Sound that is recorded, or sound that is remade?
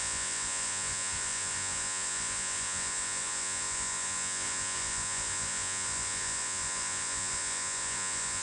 remade